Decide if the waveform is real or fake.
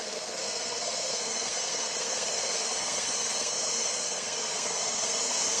fake